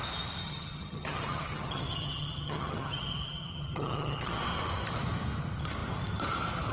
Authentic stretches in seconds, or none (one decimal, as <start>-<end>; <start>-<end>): 0.0-0.4; 4.4-6.7